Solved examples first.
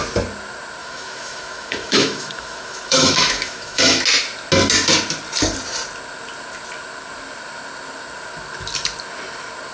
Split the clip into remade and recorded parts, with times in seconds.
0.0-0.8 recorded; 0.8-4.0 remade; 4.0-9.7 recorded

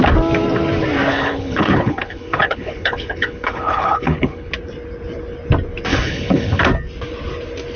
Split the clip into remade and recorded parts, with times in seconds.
0.0-1.1 recorded; 1.1-4.5 remade; 4.5-5.9 recorded; 5.9-6.6 remade; 6.6-7.8 recorded

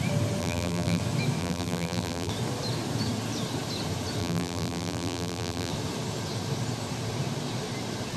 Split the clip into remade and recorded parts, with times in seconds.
0.0-0.4 recorded; 0.4-1.0 remade; 1.0-1.4 recorded; 1.4-2.3 remade; 2.3-4.2 recorded; 4.2-5.7 remade; 5.7-8.2 recorded

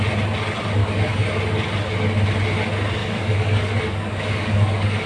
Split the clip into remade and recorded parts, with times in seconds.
0.0-0.8 recorded; 0.8-1.4 remade; 1.4-3.0 recorded; 3.0-5.1 remade

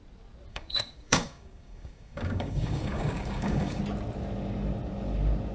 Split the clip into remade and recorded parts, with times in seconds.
0.0-0.5 recorded; 0.5-3.8 remade; 3.8-5.5 recorded

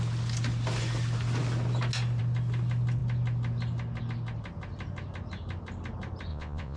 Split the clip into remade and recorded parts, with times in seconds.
0.0-6.3 recorded; 6.3-6.8 remade

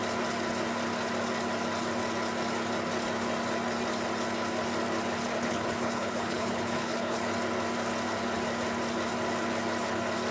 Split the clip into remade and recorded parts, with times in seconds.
0.0-5.3 recorded; 5.3-7.3 remade; 7.3-10.3 recorded

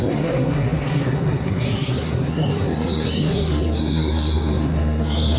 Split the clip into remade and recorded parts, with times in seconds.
0.0-5.4 remade